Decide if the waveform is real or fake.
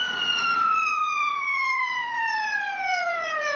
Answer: fake